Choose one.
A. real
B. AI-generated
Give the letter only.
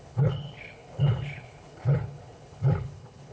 B